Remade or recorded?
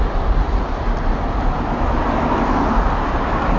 recorded